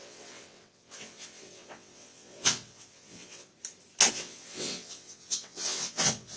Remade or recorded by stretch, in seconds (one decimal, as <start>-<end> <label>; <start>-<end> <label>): 0.0-3.5 remade; 3.5-4.1 recorded; 4.1-6.4 remade